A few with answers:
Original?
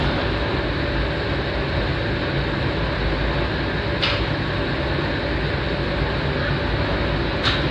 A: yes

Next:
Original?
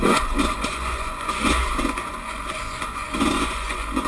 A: no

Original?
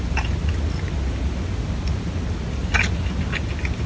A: yes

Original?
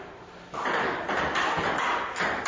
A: yes